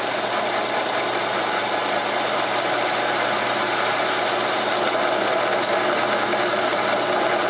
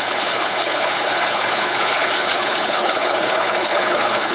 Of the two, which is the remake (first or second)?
second